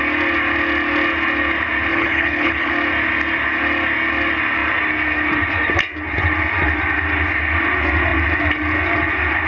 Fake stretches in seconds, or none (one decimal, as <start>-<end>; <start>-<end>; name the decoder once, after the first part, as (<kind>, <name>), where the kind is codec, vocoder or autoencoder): 1.9-2.7 (codec, HILCodec)